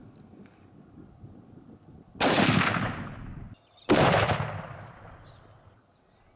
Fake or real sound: real